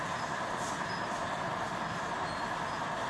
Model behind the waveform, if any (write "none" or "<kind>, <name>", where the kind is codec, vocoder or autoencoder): none